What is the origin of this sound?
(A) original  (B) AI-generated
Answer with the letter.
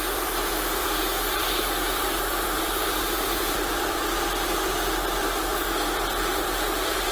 B